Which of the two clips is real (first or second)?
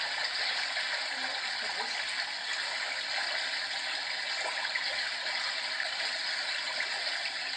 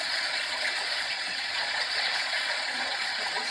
first